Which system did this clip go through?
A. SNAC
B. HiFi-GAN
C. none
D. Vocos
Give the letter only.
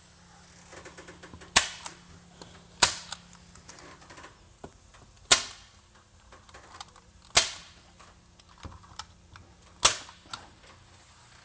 C